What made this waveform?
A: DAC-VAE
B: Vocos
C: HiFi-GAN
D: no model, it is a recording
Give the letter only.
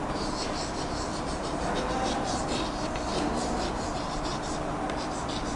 D